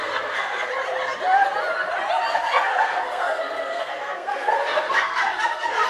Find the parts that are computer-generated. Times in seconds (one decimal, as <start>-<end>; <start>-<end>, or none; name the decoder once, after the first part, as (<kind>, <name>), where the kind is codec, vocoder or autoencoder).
0.0-0.7 (codec, SNAC); 2.3-5.9

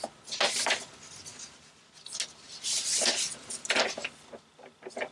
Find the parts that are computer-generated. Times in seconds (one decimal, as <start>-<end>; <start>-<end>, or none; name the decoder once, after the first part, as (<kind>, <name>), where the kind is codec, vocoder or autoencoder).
none